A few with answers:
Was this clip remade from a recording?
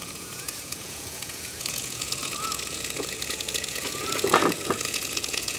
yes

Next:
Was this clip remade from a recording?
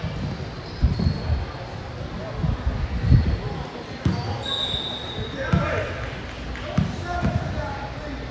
no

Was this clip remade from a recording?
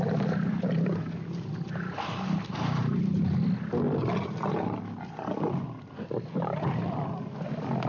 no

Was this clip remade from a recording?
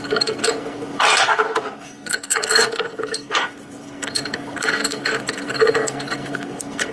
yes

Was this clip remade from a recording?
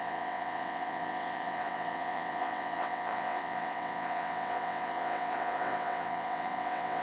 yes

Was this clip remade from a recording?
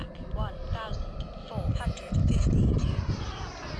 no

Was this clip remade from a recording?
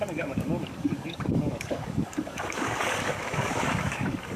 yes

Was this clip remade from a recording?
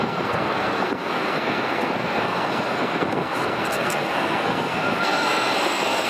yes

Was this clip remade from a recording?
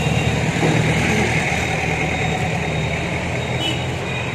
no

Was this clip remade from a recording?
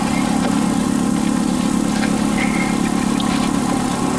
no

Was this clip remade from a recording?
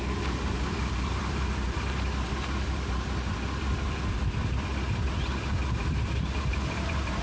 yes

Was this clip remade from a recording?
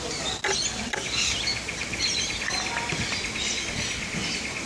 no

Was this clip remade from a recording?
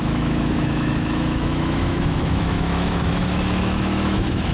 yes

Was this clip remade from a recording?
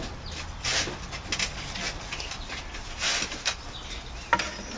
no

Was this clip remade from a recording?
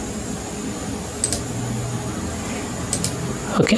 no